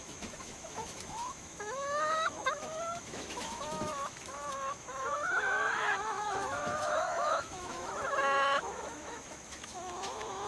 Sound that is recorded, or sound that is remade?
remade